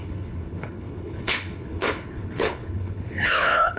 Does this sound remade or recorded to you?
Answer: remade